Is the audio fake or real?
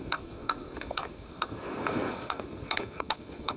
fake